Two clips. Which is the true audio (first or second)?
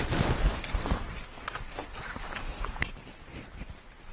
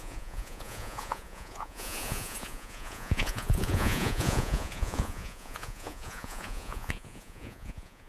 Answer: first